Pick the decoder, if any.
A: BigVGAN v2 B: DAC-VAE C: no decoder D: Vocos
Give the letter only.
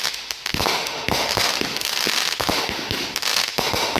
B